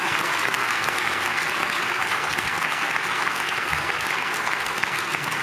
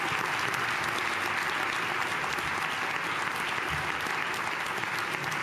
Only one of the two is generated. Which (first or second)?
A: first